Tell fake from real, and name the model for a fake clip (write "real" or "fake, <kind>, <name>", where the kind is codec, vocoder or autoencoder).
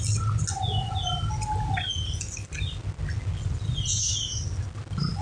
real